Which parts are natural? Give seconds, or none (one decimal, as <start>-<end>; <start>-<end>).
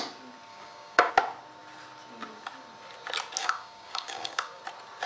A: 0.0-0.5; 1.1-3.4; 4.6-5.1